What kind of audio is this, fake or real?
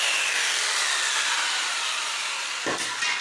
real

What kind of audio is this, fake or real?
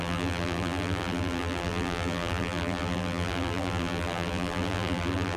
fake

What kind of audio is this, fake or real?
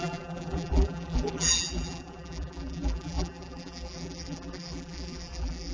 fake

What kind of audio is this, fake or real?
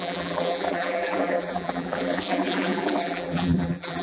fake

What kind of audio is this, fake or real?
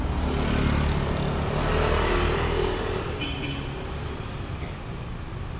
real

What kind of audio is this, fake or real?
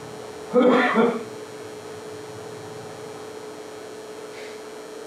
real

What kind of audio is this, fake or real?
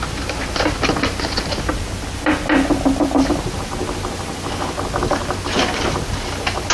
real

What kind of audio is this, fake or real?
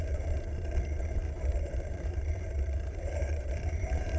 fake